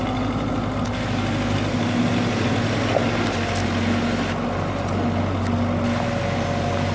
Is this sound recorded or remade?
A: recorded